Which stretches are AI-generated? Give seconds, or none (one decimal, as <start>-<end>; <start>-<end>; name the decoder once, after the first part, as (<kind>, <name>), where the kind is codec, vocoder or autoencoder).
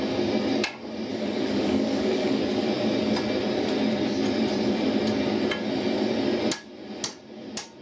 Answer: 1.1-2.4 (codec, DAC)